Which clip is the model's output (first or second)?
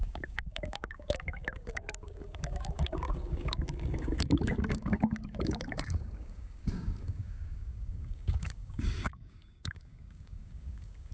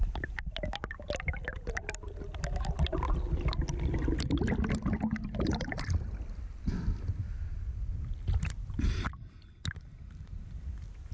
first